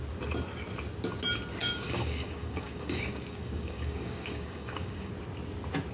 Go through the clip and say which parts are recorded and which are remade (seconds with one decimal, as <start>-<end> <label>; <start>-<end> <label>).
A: 0.0-1.6 recorded; 1.6-5.1 remade; 5.1-5.9 recorded